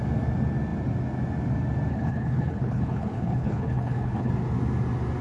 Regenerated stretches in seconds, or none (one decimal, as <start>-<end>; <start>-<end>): 1.9-4.3

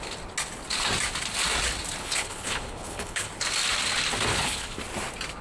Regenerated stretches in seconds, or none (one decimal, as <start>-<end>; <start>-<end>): 2.0-3.3; 4.3-4.8

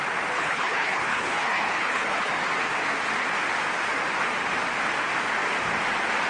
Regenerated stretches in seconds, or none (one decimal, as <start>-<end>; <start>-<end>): 0.4-2.3

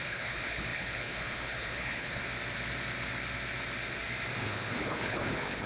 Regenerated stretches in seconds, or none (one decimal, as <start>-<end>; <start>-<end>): 0.0-2.2; 4.4-5.7

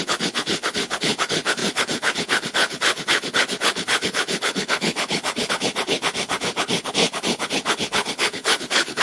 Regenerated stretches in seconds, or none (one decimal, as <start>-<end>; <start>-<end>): 0.0-9.0

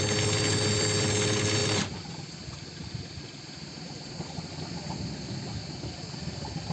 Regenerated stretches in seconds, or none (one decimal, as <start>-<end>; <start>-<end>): none

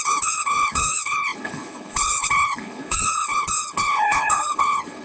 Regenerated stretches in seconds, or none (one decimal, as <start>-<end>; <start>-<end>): 0.0-5.0